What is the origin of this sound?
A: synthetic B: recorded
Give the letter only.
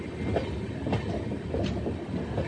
B